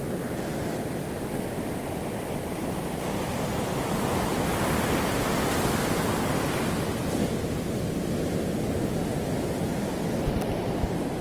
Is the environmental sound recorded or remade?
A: recorded